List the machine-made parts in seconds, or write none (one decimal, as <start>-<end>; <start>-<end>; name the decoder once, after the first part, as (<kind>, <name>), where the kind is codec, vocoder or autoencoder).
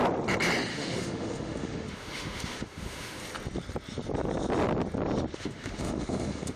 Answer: 0.7-3.2 (autoencoder, DAC-VAE); 5.3-6.6